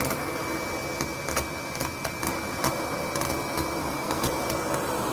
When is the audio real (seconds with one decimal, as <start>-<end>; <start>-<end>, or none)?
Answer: 0.0-3.8; 4.3-5.1